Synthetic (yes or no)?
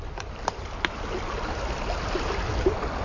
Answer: no